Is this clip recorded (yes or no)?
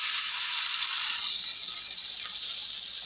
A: yes